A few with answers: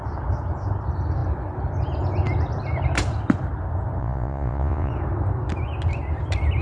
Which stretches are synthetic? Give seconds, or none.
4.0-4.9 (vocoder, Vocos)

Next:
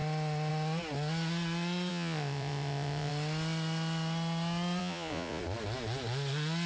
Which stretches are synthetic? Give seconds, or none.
1.9-3.1 (vocoder, Vocos); 4.8-5.4

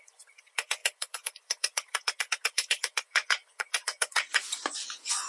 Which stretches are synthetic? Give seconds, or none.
0.0-5.3 (vocoder, Vocos)